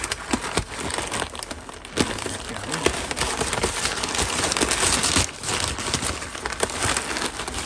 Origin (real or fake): real